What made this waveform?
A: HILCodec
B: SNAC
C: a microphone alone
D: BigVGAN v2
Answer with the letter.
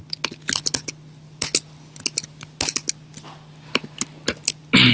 C